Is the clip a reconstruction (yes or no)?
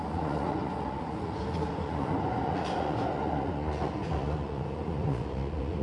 yes